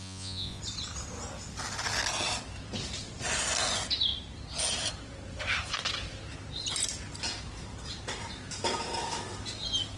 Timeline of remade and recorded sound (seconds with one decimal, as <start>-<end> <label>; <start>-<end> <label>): 0.0-0.6 remade; 0.6-10.0 recorded